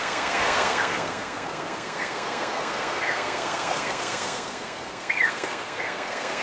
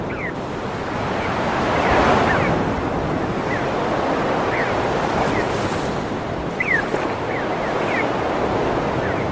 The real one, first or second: second